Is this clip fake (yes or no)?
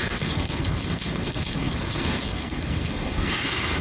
yes